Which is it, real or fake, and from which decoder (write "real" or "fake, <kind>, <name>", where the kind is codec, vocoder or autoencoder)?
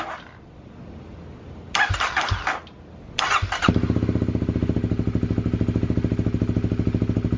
real